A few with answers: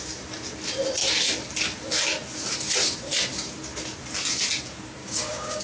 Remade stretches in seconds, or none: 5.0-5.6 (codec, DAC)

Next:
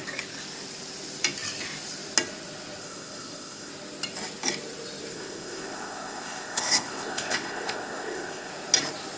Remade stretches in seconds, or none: 2.8-3.7 (codec, ZipCodec); 5.1-8.5

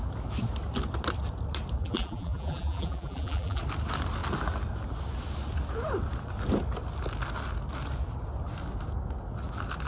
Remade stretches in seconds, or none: 1.8-3.6 (vocoder, BigVGAN v2)

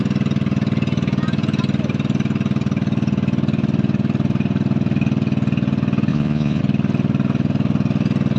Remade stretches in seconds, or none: 6.1-6.6 (vocoder, Vocos)

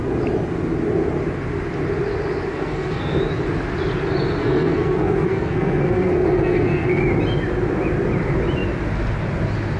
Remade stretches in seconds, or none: 2.5-3.2 (codec, SNAC); 4.4-7.0

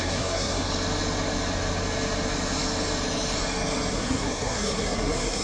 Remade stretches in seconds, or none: 0.0-0.7 (codec, SNAC); 3.9-5.4